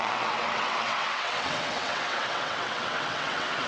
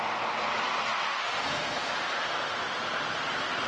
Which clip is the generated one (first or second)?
first